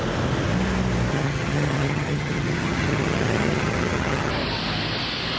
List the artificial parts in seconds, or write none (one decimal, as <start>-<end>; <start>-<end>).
1.1-4.3